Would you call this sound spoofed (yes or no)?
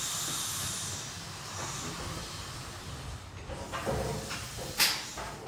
no